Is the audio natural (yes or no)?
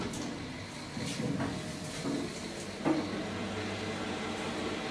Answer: yes